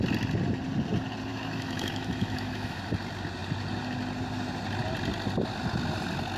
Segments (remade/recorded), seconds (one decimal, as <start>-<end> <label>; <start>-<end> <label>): 0.0-1.3 recorded; 1.3-2.8 remade; 2.8-6.4 recorded